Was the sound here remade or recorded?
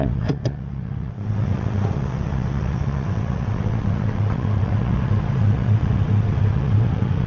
remade